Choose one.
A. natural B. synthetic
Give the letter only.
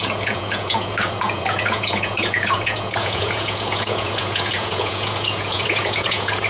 B